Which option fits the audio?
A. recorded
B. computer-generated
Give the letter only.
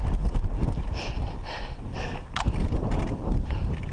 A